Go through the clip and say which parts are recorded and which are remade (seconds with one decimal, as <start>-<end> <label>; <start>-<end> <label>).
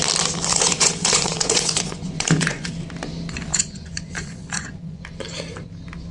0.0-0.5 recorded; 0.5-2.7 remade; 2.7-3.5 recorded; 3.5-5.0 remade; 5.0-6.1 recorded